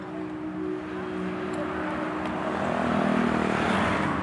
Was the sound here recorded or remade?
recorded